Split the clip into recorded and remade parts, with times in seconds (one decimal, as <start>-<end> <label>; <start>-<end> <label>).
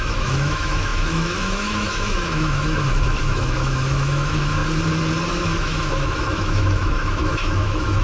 0.0-4.6 remade; 4.6-5.3 recorded; 5.3-8.0 remade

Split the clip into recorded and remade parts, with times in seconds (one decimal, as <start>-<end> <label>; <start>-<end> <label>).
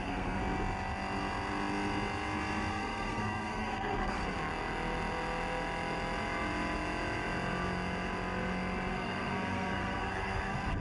0.0-0.4 remade; 0.4-2.7 recorded; 2.7-4.2 remade; 4.2-8.9 recorded; 8.9-10.8 remade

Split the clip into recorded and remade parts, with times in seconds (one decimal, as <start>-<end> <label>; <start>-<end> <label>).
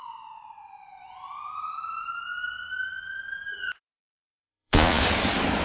0.0-4.0 recorded; 4.0-5.0 remade; 5.0-5.6 recorded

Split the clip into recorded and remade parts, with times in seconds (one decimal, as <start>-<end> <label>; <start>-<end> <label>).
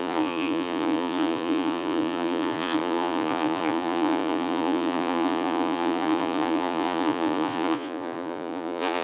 0.0-9.0 remade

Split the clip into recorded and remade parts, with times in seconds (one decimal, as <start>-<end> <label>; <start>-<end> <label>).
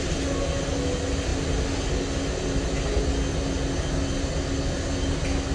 0.0-5.5 recorded